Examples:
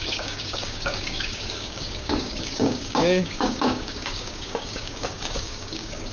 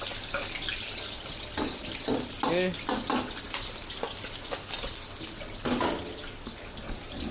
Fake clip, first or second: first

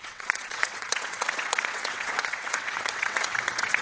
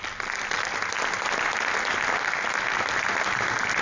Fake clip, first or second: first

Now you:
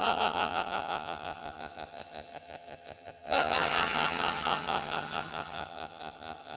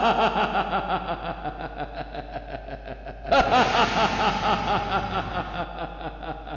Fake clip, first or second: first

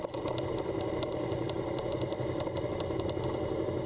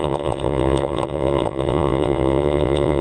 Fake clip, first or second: second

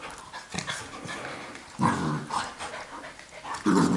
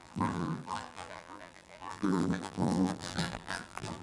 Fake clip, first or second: second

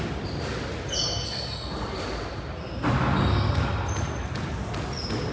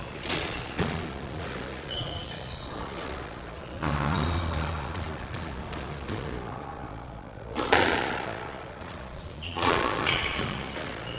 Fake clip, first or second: second